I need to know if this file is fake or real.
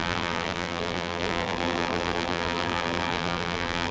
fake